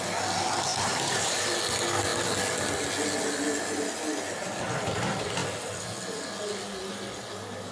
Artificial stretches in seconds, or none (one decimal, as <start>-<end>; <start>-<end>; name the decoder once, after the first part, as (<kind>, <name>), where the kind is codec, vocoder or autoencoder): 0.7-1.4 (vocoder, BigVGAN v2)